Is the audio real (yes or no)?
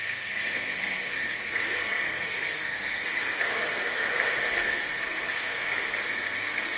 no